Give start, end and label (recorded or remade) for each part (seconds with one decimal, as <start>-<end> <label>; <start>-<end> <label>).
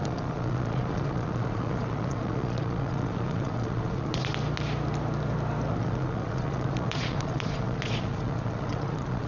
0.0-4.3 remade; 4.3-5.7 recorded; 5.7-9.3 remade